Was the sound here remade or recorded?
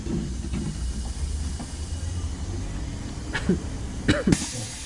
recorded